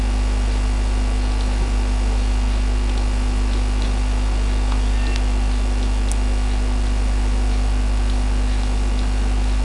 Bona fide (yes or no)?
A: yes